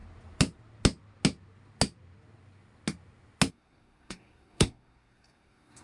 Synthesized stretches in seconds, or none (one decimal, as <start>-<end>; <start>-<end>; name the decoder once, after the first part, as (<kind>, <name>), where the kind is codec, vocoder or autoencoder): 3.5-5.8 (codec, SNAC)